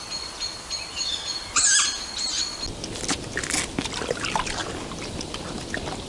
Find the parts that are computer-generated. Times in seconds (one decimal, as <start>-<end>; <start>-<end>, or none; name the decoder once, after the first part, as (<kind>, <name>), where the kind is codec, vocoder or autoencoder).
none